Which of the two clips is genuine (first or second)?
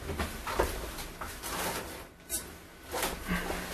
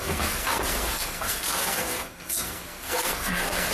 first